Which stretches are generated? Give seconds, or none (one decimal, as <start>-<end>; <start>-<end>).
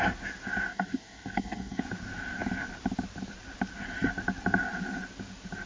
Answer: 0.7-1.8